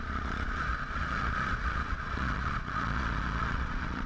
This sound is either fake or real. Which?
fake